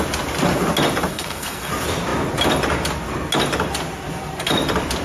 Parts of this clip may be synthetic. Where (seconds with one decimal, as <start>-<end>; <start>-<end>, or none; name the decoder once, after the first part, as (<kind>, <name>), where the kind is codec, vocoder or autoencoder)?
1.1-1.7 (codec, SNAC)